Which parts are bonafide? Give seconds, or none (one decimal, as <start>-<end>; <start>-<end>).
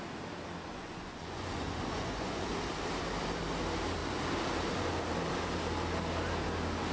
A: 0.0-0.7; 2.5-6.9